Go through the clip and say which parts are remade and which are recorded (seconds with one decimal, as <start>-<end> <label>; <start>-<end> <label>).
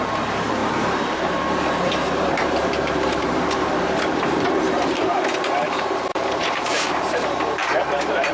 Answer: 0.0-8.3 remade